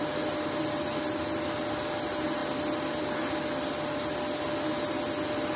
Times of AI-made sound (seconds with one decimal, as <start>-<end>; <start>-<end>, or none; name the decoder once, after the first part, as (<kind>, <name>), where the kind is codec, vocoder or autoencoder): none